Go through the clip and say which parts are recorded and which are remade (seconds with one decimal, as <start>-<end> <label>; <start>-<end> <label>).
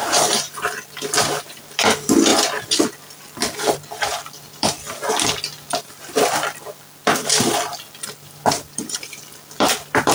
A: 0.0-10.1 remade